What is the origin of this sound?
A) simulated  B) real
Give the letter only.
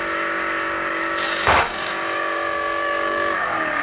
A